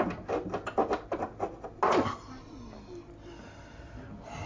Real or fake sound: real